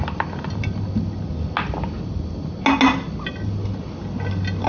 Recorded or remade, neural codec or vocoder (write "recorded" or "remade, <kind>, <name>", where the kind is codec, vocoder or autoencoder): recorded